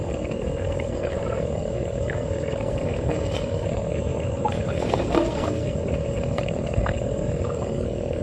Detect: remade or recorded remade